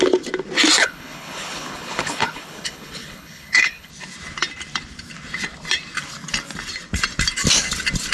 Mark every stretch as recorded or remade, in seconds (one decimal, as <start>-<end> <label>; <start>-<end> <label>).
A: 0.0-0.8 recorded; 0.8-3.9 remade; 3.9-8.1 recorded